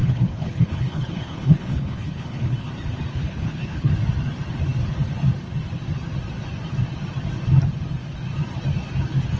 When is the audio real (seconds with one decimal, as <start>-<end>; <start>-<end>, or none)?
2.7-3.1; 3.9-9.4